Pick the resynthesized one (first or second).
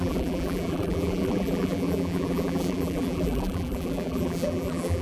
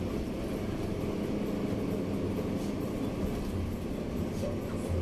first